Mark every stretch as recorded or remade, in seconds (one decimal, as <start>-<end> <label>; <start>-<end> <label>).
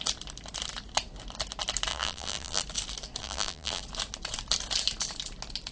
0.0-1.9 recorded; 1.9-2.6 remade; 2.6-3.2 recorded; 3.2-3.8 remade; 3.8-5.7 recorded